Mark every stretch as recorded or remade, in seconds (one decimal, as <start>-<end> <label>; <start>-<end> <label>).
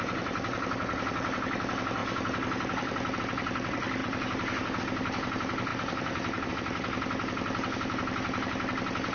0.0-4.0 recorded; 4.0-4.8 remade; 4.8-5.7 recorded; 5.7-6.5 remade; 6.5-9.1 recorded